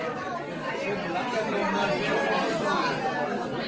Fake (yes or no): no